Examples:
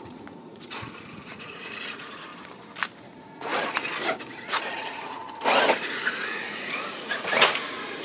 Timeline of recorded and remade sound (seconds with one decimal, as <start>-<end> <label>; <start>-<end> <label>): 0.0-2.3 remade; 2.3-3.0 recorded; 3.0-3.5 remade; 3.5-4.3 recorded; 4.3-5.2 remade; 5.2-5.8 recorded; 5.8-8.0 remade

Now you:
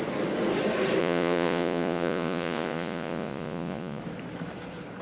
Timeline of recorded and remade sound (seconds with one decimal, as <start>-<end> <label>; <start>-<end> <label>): 0.0-1.0 recorded; 1.0-4.0 remade; 4.0-5.0 recorded

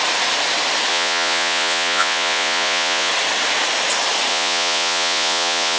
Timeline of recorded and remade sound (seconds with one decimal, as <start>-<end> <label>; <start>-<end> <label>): 0.0-0.9 recorded; 0.9-3.1 remade; 3.1-4.3 recorded; 4.3-5.8 remade

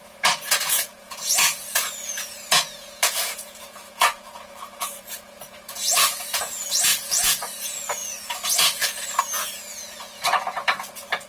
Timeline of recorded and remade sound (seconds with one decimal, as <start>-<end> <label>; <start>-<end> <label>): 0.0-11.3 remade

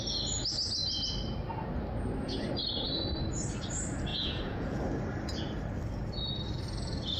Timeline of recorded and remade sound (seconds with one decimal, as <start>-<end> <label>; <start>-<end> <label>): 0.0-4.1 recorded; 4.1-4.8 remade; 4.8-7.2 recorded

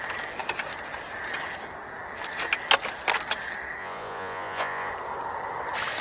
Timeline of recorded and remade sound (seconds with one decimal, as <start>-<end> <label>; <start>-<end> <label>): 0.0-3.8 recorded; 3.8-4.9 remade; 4.9-6.0 recorded

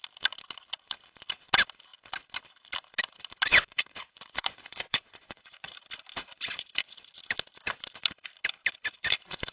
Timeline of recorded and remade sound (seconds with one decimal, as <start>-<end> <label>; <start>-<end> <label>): 0.0-3.5 recorded; 3.5-5.8 remade; 5.8-9.5 recorded